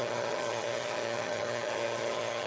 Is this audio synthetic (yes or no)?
yes